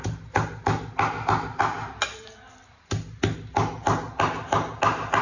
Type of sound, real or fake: real